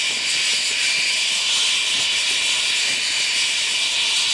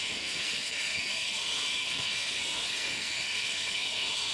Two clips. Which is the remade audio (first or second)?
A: second